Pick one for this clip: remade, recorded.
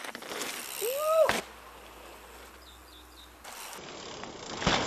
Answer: recorded